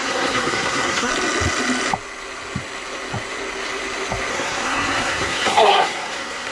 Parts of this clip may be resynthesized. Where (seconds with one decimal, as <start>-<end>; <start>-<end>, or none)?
0.0-1.1; 4.3-6.5